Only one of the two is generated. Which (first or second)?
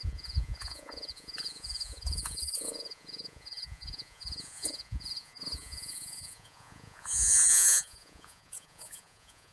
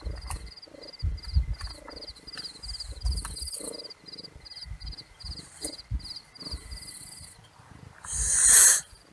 first